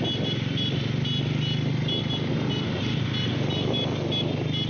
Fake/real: real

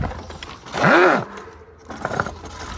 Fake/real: real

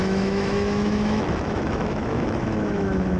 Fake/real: fake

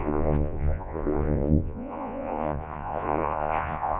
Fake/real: fake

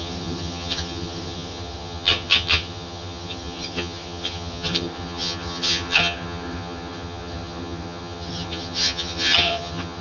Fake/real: fake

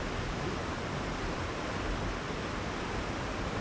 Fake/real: real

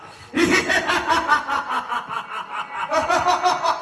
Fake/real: real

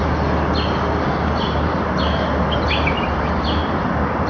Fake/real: real